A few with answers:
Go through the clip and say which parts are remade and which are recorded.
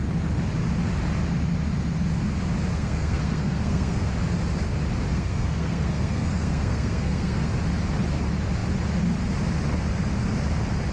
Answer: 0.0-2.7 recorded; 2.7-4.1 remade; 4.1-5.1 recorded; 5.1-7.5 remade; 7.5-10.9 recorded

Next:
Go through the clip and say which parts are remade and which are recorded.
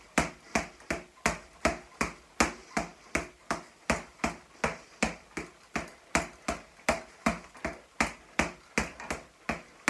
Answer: 0.0-9.9 recorded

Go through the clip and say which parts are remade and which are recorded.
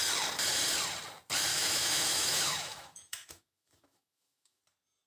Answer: 0.0-1.5 recorded; 1.5-4.6 remade; 4.6-5.1 recorded